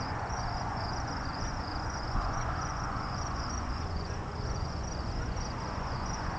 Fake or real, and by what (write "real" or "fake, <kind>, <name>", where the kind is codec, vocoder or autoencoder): fake, vocoder, Vocos